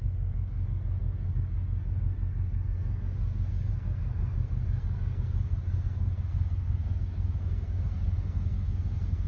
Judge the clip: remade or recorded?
remade